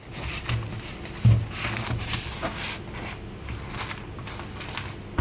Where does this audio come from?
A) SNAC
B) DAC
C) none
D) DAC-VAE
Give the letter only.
C